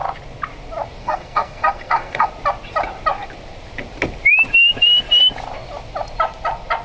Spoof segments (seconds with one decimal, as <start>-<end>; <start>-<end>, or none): 1.0-2.3